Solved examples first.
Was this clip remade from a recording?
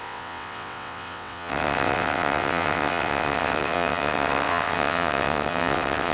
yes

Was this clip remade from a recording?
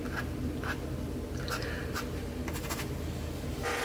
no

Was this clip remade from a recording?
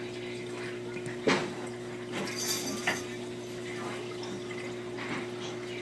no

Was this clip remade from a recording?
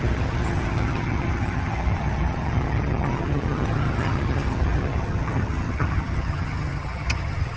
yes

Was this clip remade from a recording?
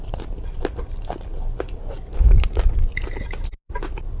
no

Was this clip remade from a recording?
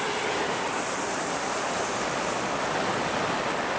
no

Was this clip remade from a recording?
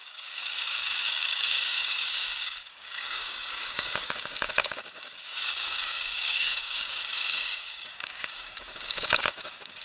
yes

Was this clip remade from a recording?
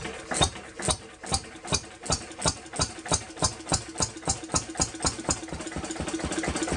no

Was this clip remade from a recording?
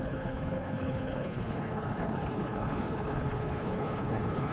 yes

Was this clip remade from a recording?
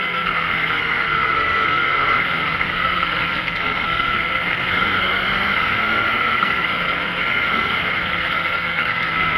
yes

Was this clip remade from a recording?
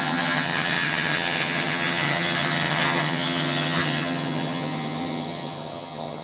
yes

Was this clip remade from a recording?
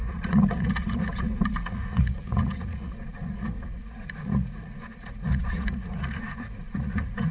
yes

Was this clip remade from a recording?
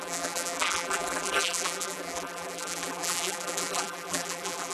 yes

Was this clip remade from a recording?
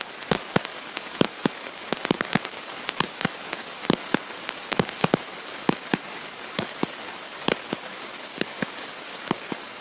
yes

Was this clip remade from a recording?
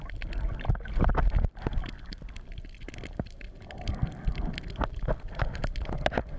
no